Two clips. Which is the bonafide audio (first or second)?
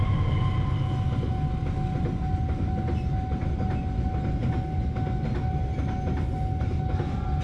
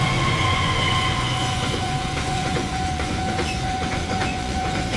first